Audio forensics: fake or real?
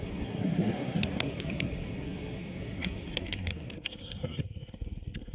fake